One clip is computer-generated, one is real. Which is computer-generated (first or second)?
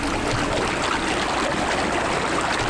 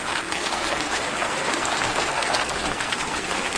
second